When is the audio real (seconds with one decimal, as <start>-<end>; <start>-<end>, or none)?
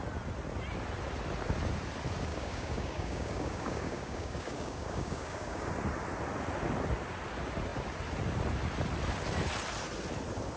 0.0-2.3; 5.7-10.6